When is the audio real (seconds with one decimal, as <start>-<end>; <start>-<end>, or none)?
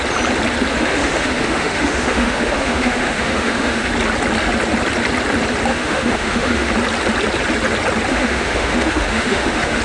0.0-0.7; 3.9-5.7; 6.7-8.1